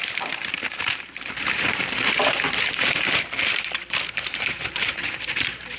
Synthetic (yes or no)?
yes